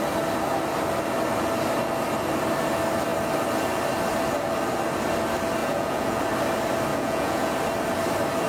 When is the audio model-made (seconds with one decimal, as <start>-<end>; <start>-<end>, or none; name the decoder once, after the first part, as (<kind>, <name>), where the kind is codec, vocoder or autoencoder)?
5.6-6.2 (vocoder, Vocos); 6.9-7.5

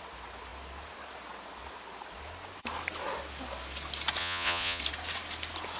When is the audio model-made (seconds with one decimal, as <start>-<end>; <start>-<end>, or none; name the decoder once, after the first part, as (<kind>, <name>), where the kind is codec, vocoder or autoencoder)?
4.2-4.8 (vocoder, Vocos)